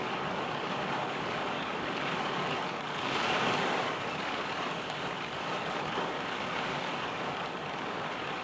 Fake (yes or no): yes